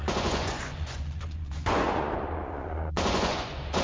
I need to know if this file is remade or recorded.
remade